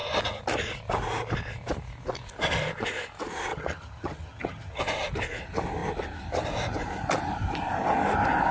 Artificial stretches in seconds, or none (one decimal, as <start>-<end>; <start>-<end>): 3.5-4.8

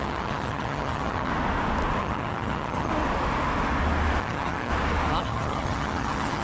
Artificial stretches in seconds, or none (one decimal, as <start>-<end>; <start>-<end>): 0.0-1.3; 2.0-2.9; 4.2-4.7; 5.2-6.4

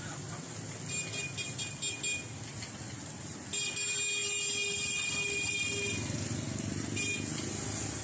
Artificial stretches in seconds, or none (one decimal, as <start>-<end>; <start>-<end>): none